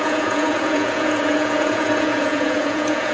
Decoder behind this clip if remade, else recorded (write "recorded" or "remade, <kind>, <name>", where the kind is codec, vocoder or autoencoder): remade, vocoder, Vocos